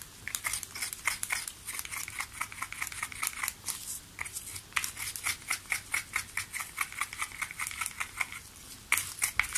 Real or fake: real